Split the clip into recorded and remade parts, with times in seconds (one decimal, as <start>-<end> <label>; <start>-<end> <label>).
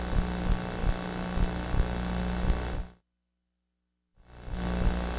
0.0-5.2 recorded